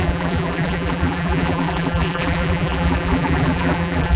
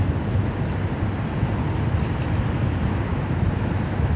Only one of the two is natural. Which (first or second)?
second